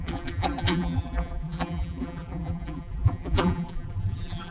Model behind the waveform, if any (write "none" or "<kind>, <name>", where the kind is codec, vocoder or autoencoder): vocoder, BigVGAN v2